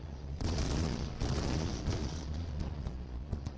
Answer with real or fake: fake